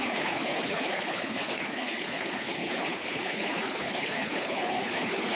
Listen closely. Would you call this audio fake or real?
fake